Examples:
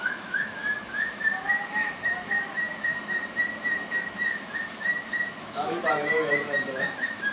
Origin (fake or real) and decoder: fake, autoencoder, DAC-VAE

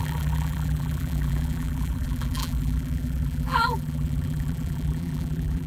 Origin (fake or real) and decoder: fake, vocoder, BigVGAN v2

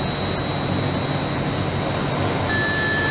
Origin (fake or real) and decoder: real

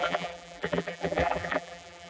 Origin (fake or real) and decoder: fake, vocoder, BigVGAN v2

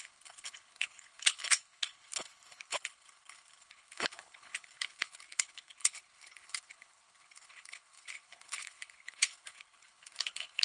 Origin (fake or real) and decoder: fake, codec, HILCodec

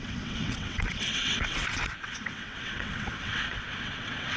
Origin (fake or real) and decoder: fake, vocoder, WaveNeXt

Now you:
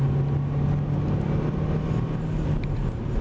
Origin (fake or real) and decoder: real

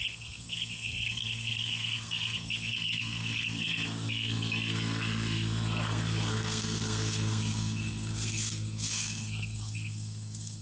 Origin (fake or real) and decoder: fake, codec, SNAC